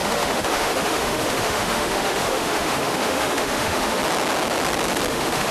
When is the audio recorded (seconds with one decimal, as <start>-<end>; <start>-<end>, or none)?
4.0-5.1